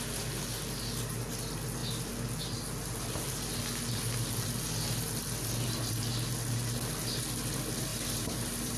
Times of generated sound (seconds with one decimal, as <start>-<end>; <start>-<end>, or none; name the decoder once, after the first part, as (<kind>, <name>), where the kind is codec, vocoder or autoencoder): 7.9-8.8 (vocoder, BigVGAN v2)